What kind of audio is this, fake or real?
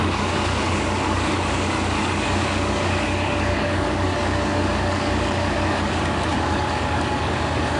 fake